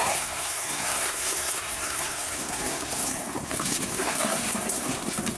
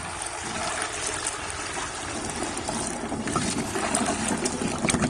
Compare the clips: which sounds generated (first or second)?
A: first